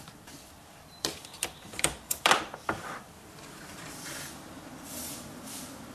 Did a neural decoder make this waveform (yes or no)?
yes